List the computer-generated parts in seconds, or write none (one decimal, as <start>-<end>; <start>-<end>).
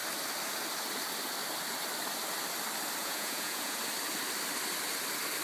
3.0-3.8